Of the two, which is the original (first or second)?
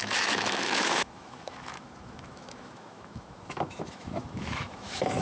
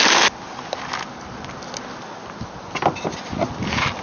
second